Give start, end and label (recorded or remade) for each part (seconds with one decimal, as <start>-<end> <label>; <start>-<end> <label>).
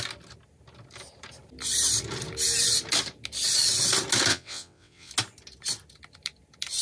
0.0-4.3 recorded; 4.3-5.1 remade; 5.1-6.8 recorded